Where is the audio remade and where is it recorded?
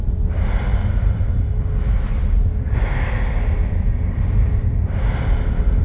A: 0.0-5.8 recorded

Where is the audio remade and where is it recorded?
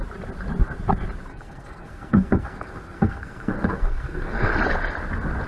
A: 0.0-1.3 recorded; 1.3-4.5 remade; 4.5-5.5 recorded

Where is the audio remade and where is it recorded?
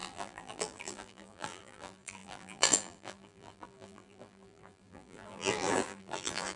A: 0.0-6.6 remade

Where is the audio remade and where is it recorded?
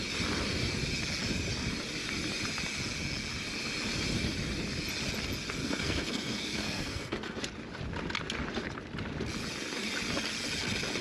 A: 0.0-5.6 recorded; 5.6-7.4 remade; 7.4-11.0 recorded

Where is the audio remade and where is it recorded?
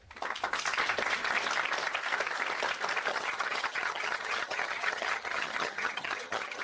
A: 0.0-3.1 recorded; 3.1-6.6 remade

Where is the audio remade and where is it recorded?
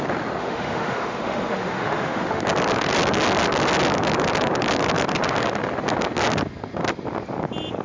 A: 0.0-0.4 recorded; 0.4-2.4 remade; 2.4-7.8 recorded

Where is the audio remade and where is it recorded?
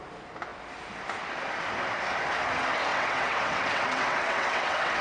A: 0.0-2.9 recorded; 2.9-5.0 remade